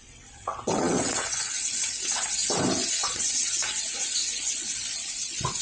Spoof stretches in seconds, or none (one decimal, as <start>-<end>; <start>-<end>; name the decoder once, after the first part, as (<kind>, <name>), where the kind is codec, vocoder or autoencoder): 0.0-2.4 (vocoder, WaveNeXt); 2.9-5.6